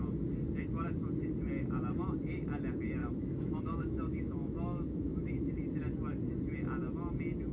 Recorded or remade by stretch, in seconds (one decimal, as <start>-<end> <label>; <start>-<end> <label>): 0.0-3.0 recorded; 3.0-5.3 remade; 5.3-7.5 recorded